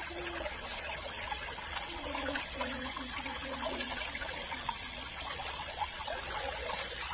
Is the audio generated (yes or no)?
yes